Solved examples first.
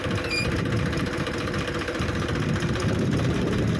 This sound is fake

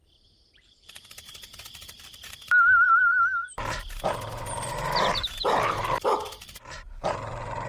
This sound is fake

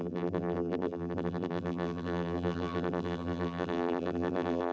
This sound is fake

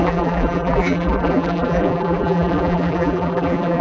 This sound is fake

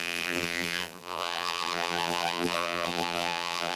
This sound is fake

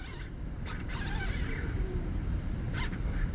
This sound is fake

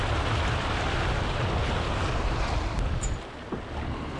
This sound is real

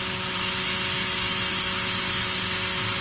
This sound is real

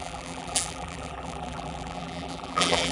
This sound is fake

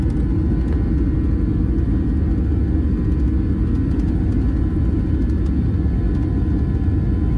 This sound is real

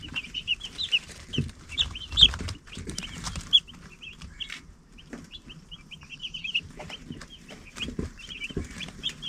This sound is fake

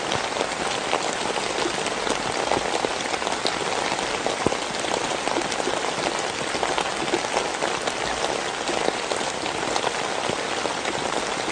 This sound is real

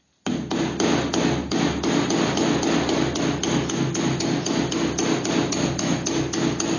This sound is real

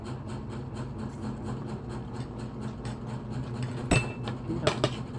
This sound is real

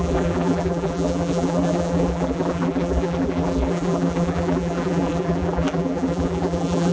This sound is fake